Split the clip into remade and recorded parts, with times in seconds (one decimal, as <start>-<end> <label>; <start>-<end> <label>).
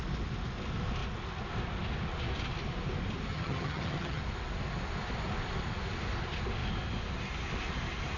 0.0-3.3 recorded; 3.3-4.2 remade; 4.2-8.2 recorded